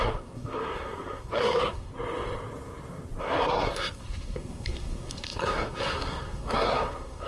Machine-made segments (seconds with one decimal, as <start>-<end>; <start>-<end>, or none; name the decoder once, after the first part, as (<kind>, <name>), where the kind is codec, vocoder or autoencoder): 0.0-1.9 (codec, SNAC); 3.2-7.3